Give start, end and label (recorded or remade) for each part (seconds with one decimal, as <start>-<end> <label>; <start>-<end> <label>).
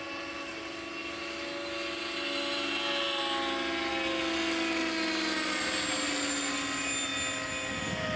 0.0-8.2 recorded